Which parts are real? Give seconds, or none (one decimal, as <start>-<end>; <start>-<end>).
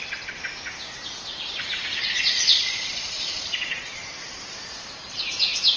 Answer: 0.0-2.0; 4.0-5.8